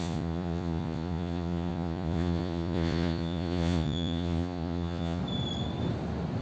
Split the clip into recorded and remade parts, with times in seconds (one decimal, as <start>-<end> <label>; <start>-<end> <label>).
0.0-5.2 remade; 5.2-6.4 recorded